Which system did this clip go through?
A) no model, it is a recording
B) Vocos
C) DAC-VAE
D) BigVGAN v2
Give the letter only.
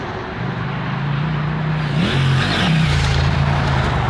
A